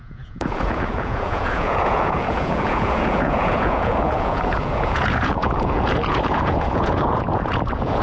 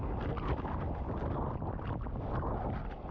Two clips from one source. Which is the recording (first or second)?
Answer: second